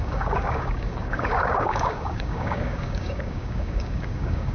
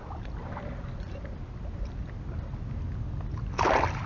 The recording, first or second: second